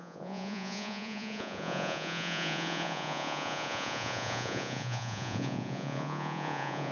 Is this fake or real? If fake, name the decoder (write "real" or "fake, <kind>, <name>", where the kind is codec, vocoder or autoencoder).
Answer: fake, vocoder, Vocos